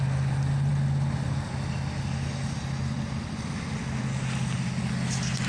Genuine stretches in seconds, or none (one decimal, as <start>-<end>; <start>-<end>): 0.0-5.5